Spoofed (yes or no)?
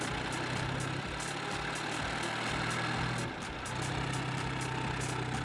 no